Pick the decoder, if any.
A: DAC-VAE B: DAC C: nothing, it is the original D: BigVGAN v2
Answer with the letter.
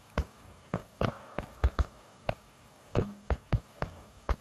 B